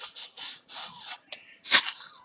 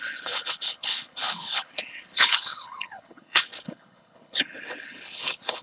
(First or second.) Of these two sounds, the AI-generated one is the second